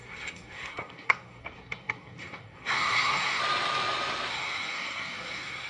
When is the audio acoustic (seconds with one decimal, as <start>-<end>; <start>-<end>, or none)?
3.4-4.3